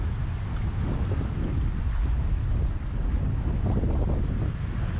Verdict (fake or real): real